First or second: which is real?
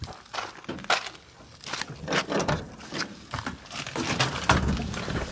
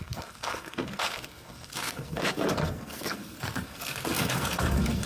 first